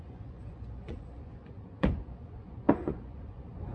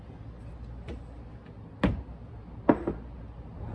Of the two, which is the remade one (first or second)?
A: first